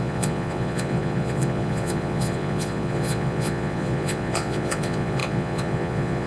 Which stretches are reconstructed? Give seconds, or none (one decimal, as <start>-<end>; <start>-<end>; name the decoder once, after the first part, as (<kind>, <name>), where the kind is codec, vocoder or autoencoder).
0.0-6.3 (vocoder, Vocos)